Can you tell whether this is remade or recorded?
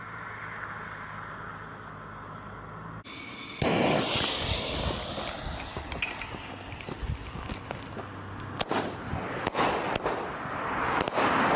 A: recorded